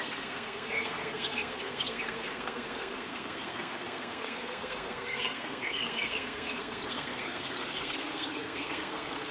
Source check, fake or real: fake